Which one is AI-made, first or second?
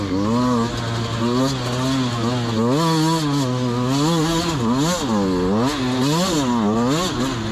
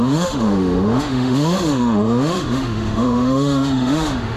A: second